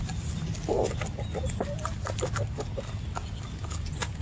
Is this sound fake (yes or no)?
no